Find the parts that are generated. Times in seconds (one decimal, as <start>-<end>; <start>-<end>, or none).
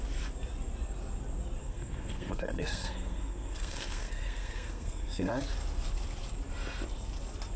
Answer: 1.6-5.3